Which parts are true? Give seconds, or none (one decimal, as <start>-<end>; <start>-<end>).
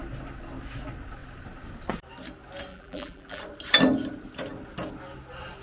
0.0-2.7; 3.4-5.6